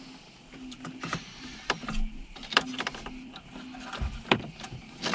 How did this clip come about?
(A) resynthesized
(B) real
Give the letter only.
A